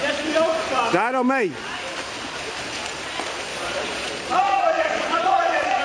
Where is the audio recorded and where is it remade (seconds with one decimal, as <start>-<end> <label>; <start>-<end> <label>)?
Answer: 0.0-3.5 recorded; 3.5-5.8 remade